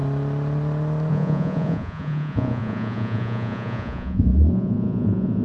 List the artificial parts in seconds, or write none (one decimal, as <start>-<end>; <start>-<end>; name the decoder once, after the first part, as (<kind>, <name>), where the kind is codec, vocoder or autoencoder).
1.1-5.4 (vocoder, Vocos)